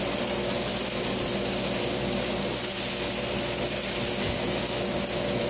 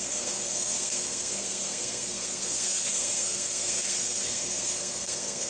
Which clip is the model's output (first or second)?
second